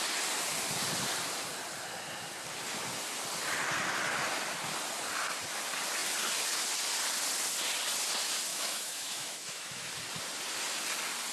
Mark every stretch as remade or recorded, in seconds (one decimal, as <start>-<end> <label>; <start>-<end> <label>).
0.0-8.5 recorded; 8.5-9.9 remade; 9.9-11.3 recorded